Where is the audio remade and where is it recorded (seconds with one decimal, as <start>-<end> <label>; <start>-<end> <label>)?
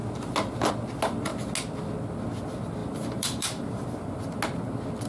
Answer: 0.0-2.8 recorded; 2.8-4.2 remade; 4.2-5.1 recorded